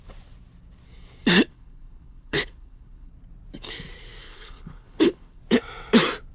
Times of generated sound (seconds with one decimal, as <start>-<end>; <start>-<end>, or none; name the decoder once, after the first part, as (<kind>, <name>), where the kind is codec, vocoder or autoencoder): 1.5-3.1 (codec, HILCodec); 4.2-5.4